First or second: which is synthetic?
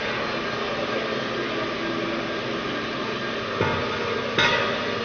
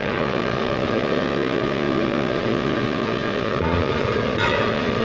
second